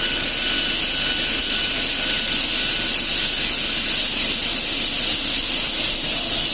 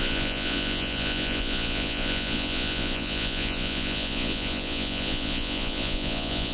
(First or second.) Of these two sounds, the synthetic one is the second